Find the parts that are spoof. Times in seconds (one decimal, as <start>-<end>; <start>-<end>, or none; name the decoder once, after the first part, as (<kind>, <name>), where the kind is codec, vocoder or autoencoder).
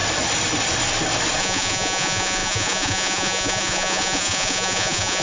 1.4-5.2 (vocoder, Vocos)